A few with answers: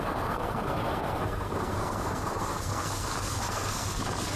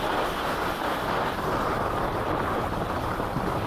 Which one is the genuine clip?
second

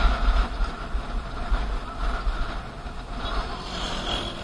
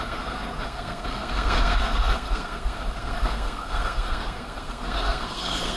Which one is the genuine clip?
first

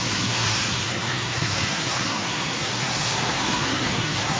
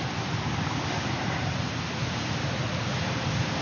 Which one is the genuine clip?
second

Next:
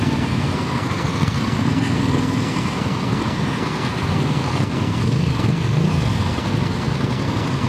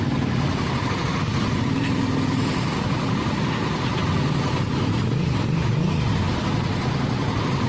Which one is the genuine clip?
second